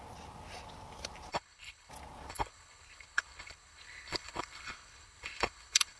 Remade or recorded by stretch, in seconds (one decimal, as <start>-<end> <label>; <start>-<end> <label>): 0.0-1.3 recorded; 1.3-1.9 remade; 1.9-2.3 recorded; 2.3-6.0 remade